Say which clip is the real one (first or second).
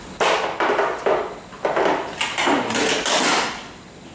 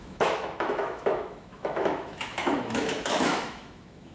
first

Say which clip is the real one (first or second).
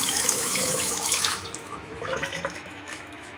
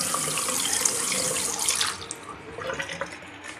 second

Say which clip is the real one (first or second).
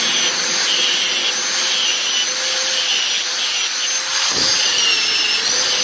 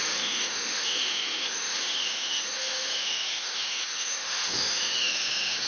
first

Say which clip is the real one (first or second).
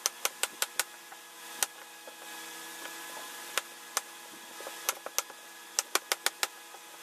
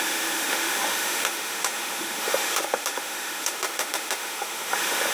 first